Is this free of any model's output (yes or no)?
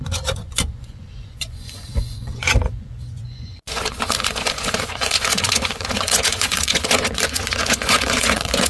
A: no